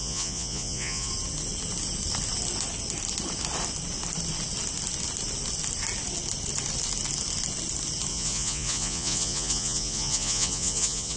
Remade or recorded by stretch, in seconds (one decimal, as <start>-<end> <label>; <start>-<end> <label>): 0.0-1.1 remade; 1.1-8.1 recorded; 8.1-11.2 remade

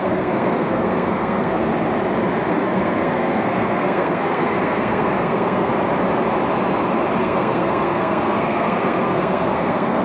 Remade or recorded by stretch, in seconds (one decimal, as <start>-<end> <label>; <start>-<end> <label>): 0.0-1.7 remade; 1.7-2.5 recorded; 2.5-5.7 remade; 5.7-7.2 recorded; 7.2-10.0 remade

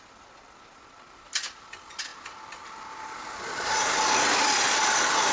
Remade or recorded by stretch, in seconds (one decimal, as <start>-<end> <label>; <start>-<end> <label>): 0.0-5.3 recorded